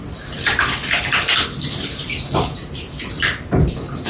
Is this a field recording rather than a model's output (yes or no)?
no